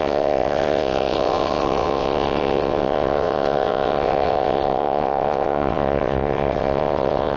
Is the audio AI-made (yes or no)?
yes